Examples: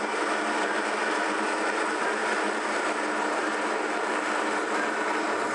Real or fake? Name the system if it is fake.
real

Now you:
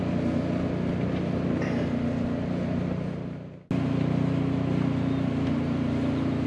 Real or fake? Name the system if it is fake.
real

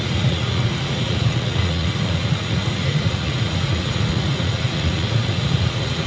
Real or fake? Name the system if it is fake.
fake, vocoder, Vocos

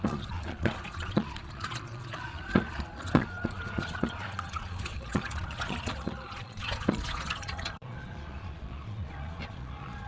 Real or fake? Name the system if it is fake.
fake, vocoder, Vocos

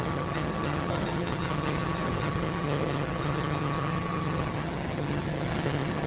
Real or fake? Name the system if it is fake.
fake, vocoder, HiFi-GAN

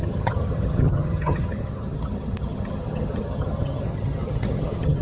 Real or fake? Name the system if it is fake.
fake, vocoder, HiFi-GAN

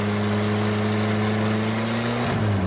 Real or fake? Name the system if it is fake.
real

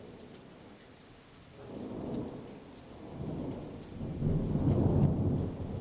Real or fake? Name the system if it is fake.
real